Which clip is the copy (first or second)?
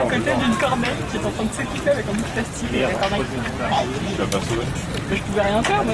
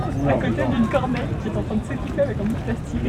second